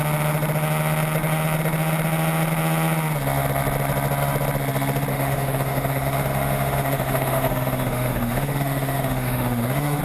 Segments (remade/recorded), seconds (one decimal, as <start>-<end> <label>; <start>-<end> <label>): 0.0-5.1 recorded; 5.1-10.0 remade